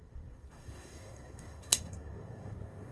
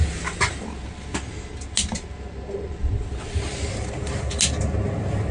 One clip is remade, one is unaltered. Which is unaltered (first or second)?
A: second